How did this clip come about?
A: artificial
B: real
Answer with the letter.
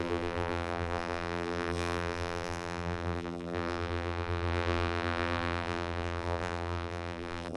A